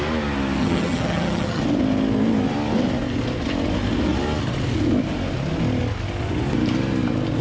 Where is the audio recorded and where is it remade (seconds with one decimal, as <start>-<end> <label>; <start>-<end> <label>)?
0.0-0.6 recorded; 0.6-1.6 remade; 1.6-7.4 recorded

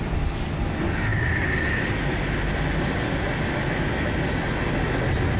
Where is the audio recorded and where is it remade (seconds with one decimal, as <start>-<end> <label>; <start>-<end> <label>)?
0.0-5.4 recorded

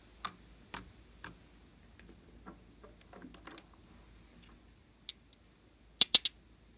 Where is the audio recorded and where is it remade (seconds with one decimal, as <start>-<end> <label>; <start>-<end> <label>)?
0.0-6.8 recorded